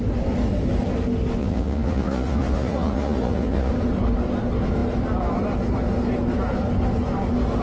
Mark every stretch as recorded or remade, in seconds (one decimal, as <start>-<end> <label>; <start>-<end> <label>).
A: 0.0-1.4 recorded; 1.4-3.7 remade; 3.7-7.6 recorded